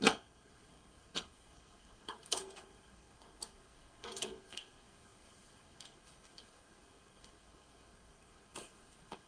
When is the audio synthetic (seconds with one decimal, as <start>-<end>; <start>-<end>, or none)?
0.0-9.3